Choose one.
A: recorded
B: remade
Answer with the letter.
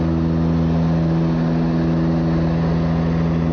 A